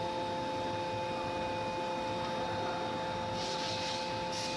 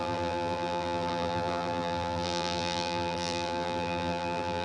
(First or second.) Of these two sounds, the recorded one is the first